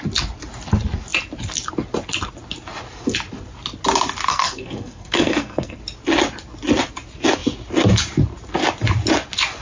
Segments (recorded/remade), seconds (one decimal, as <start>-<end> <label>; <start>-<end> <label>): 0.0-4.3 recorded; 4.3-5.8 remade; 5.8-9.6 recorded